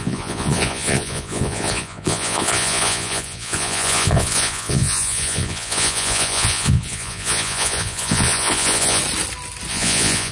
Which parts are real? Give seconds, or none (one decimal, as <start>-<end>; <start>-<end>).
9.0-9.7